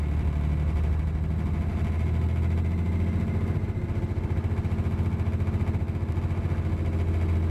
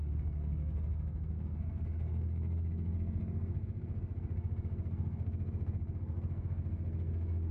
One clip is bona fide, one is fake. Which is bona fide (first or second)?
first